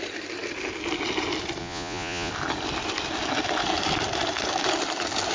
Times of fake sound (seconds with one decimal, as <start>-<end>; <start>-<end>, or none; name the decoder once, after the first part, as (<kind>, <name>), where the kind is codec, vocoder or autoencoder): 1.6-2.3 (vocoder, Vocos)